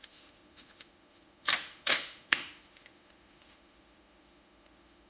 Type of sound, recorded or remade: remade